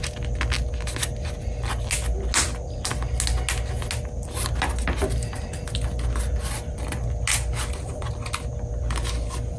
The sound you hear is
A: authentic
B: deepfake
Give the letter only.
A